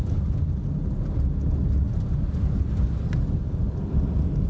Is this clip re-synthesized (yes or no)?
no